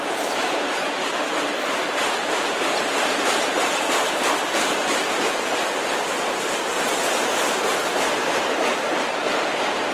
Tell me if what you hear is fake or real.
fake